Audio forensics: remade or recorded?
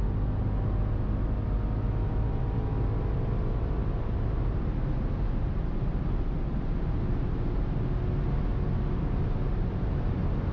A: recorded